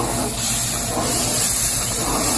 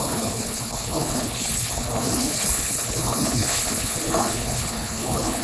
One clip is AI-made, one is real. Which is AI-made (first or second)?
second